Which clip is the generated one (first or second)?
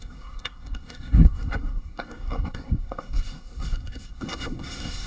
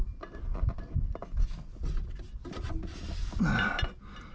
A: first